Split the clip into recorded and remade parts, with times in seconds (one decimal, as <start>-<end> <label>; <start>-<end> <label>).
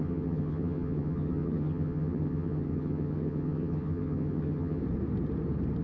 0.0-4.8 remade; 4.8-5.8 recorded